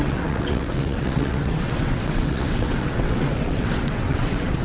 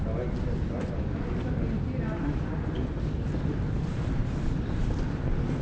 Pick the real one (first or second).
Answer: second